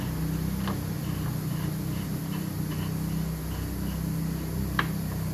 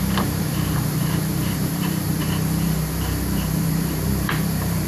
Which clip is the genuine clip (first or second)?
first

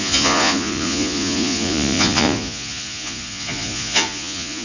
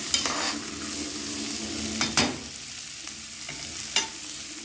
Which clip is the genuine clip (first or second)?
second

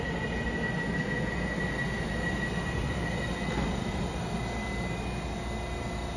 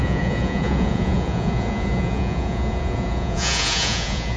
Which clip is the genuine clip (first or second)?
first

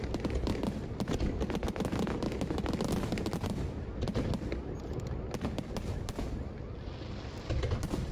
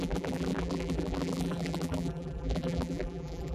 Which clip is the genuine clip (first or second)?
first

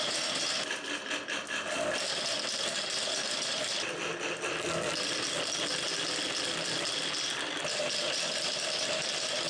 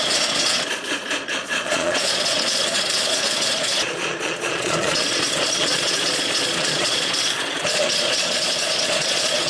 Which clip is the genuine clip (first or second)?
first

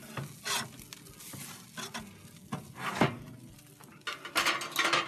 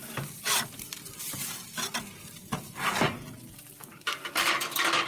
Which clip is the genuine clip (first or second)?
first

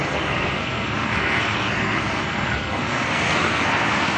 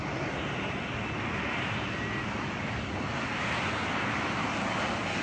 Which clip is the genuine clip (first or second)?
second